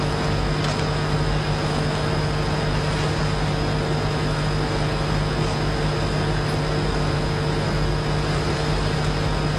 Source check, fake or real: real